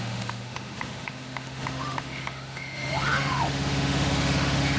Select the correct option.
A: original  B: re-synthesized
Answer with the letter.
B